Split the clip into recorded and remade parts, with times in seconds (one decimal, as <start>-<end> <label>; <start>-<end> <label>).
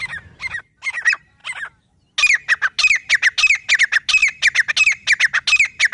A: 0.0-5.9 recorded